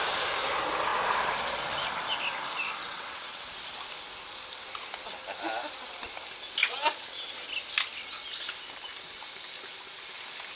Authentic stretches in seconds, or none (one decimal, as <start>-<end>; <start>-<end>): 0.0-2.8; 3.6-6.6; 7.5-10.6